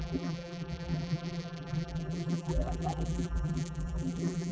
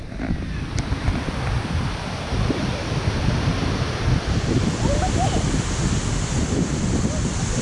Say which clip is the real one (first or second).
second